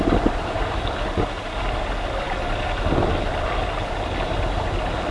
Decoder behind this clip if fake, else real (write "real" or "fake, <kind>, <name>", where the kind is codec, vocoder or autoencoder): real